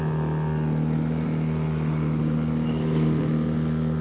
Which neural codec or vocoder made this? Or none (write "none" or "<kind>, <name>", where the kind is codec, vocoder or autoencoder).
none